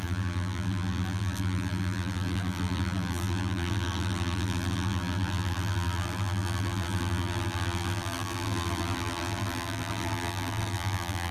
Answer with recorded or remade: remade